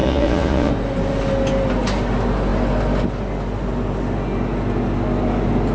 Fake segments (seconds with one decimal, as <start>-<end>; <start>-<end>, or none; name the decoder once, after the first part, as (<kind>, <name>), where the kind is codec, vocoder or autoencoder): 0.0-0.7 (vocoder, Vocos)